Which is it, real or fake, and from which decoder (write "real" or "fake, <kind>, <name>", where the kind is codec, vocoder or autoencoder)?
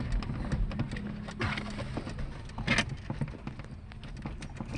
real